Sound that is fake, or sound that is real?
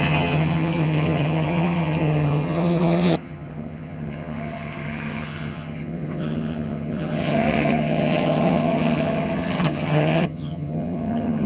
fake